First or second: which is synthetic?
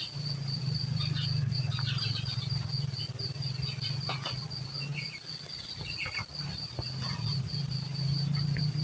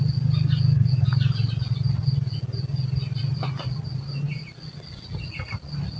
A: first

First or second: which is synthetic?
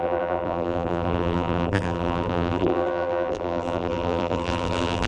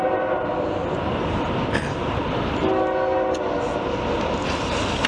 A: first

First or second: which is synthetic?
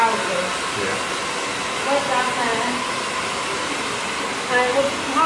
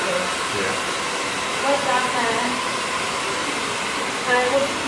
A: second